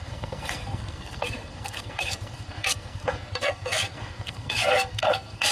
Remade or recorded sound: remade